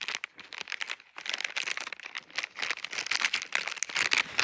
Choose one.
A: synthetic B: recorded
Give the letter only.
B